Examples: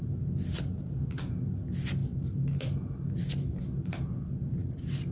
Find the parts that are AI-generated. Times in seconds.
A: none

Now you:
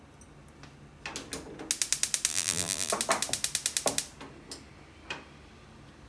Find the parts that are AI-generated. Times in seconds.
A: 2.3-2.9 (vocoder, BigVGAN v2)

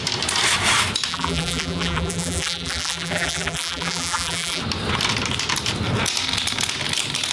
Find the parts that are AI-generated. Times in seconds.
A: 1.1-4.6 (vocoder, BigVGAN v2)

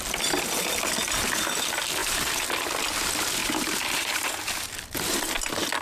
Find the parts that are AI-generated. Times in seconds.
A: 2.0-2.7 (vocoder, BigVGAN v2); 3.4-5.0

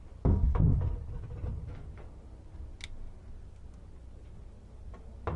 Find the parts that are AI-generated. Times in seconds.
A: 0.6-1.2 (vocoder, BigVGAN v2)

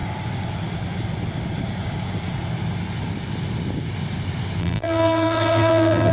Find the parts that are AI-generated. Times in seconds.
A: 4.6-6.1 (vocoder, BigVGAN v2)